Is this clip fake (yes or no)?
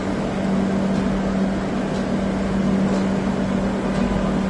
no